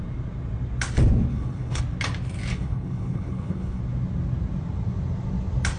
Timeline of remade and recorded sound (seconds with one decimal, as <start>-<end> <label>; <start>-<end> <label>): 0.0-1.3 recorded; 1.3-1.8 remade; 1.8-2.5 recorded; 2.5-3.8 remade; 3.8-5.8 recorded